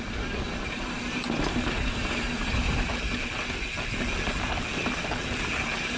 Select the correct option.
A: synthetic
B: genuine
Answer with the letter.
B